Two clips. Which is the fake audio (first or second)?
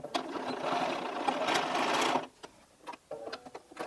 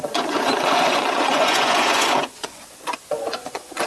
second